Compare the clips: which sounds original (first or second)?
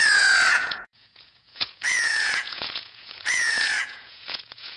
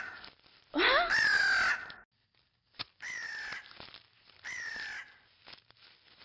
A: second